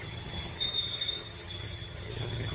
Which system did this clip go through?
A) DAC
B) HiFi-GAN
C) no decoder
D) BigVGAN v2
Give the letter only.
B